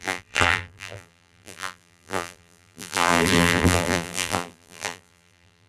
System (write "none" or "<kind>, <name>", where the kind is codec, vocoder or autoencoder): vocoder, BigVGAN v2